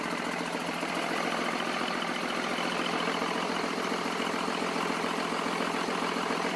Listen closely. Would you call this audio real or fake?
real